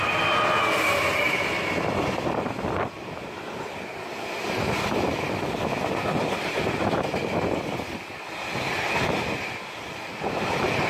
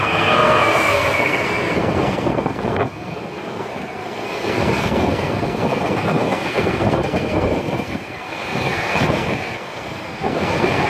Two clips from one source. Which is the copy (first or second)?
second